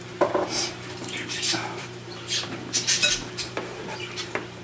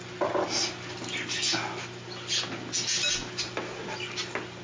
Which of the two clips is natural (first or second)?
second